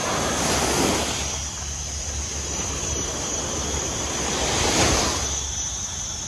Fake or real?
real